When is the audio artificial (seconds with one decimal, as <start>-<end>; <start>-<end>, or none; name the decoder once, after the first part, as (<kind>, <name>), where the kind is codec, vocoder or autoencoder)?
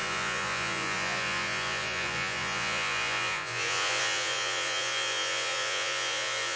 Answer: 0.0-6.6 (vocoder, Vocos)